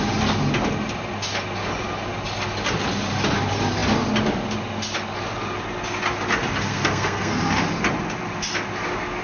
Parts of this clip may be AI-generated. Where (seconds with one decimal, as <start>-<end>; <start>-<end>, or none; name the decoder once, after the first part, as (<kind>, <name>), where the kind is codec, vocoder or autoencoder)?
6.7-7.4 (codec, SNAC)